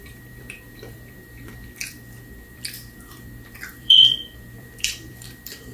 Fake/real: fake